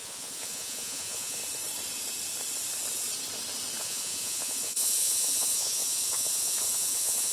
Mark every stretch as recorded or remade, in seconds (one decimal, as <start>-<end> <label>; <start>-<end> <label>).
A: 0.0-1.4 remade; 1.4-3.8 recorded; 3.8-7.3 remade